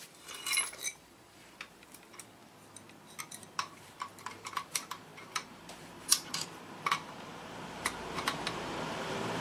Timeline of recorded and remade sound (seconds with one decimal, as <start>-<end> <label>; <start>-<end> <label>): 0.0-2.4 remade; 2.4-3.2 recorded; 3.2-9.4 remade